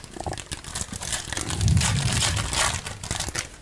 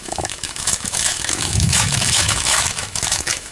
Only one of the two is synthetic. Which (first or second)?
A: second